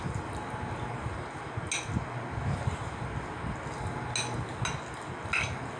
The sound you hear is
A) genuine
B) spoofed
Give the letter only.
A